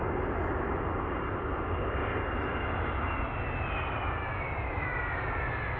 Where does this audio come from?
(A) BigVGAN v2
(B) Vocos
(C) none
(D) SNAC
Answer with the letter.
C